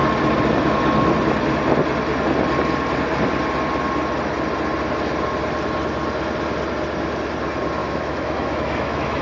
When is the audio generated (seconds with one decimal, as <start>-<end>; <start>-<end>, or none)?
7.8-9.2